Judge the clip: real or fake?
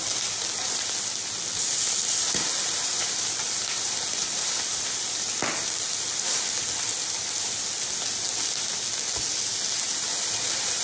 real